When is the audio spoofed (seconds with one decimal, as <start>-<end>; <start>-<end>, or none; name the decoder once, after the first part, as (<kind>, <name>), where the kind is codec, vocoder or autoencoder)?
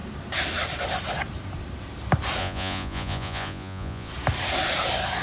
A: 2.4-4.1 (vocoder, Vocos)